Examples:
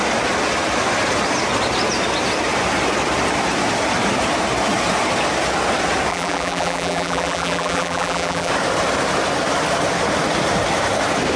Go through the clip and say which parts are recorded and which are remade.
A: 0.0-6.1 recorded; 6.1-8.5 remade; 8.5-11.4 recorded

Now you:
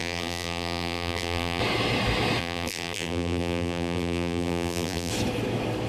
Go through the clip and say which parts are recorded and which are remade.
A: 0.0-1.6 remade; 1.6-2.4 recorded; 2.4-5.1 remade; 5.1-5.9 recorded

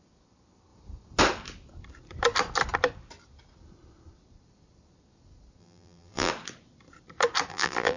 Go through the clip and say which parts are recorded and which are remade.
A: 0.0-5.6 recorded; 5.6-6.3 remade; 6.3-7.5 recorded; 7.5-8.0 remade

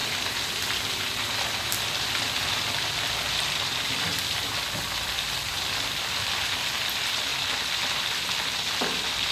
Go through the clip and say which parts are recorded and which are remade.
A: 0.0-7.3 remade; 7.3-7.8 recorded; 7.8-9.3 remade

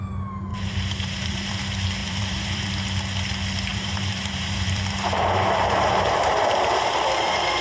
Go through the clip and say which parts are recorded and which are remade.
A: 0.0-0.5 recorded; 0.5-1.5 remade; 1.5-2.0 recorded; 2.0-2.7 remade; 2.7-3.7 recorded; 3.7-6.3 remade; 6.3-7.6 recorded

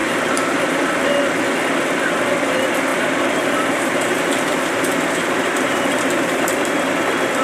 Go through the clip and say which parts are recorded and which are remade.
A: 0.0-0.7 remade; 0.7-2.9 recorded; 2.9-6.6 remade; 6.6-7.4 recorded

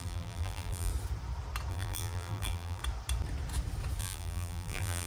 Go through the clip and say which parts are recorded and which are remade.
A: 0.0-0.9 remade; 0.9-1.7 recorded; 1.7-2.8 remade; 2.8-4.0 recorded; 4.0-5.1 remade